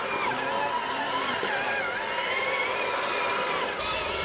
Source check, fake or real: real